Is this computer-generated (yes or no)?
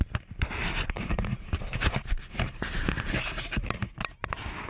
yes